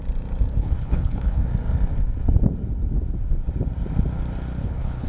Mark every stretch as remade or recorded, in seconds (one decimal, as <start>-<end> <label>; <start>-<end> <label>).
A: 0.0-0.5 recorded; 0.5-1.5 remade; 1.5-4.6 recorded; 4.6-5.1 remade

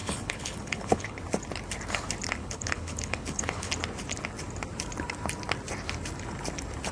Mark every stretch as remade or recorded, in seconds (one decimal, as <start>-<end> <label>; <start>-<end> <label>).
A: 0.0-1.2 remade; 1.2-2.4 recorded; 2.4-3.7 remade; 3.7-6.9 recorded